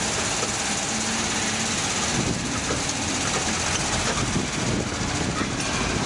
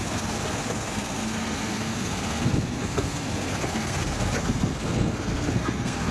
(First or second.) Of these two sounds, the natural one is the first